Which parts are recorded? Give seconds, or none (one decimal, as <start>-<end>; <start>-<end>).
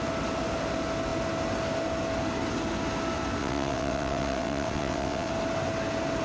0.0-3.4; 5.3-6.2